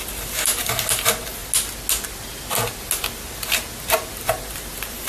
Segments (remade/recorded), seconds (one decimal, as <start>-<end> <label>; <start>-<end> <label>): 0.0-1.4 remade; 1.4-4.5 recorded; 4.5-5.1 remade